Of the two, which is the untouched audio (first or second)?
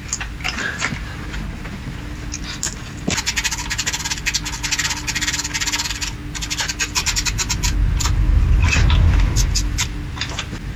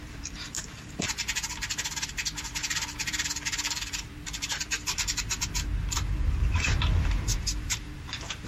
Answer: first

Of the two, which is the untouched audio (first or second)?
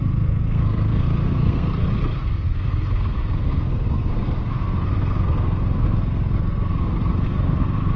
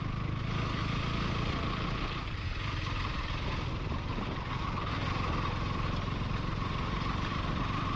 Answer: second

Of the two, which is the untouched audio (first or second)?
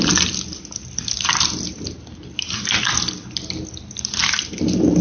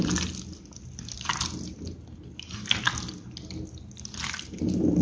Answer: second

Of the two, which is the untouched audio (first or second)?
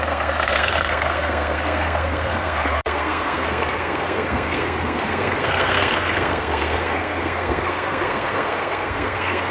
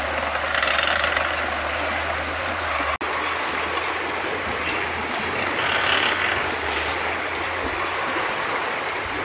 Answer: second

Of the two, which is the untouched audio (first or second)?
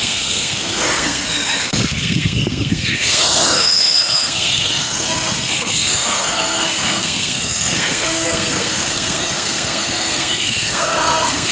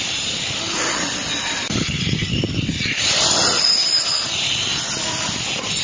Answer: second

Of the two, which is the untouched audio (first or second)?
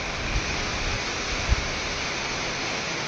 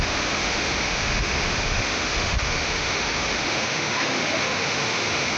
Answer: first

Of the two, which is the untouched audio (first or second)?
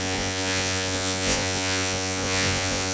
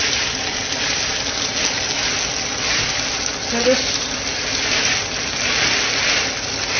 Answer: second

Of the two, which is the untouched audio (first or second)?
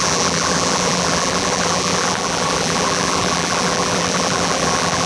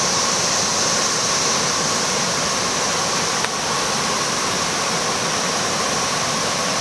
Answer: second